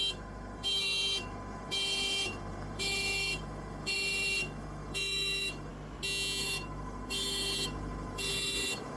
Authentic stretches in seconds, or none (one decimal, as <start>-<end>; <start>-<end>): 5.7-6.4